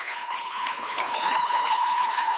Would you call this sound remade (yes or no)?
yes